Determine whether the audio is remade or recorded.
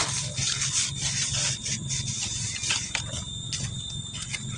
recorded